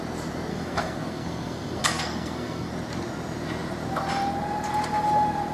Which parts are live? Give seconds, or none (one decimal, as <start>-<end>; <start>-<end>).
0.0-0.5; 2.7-5.5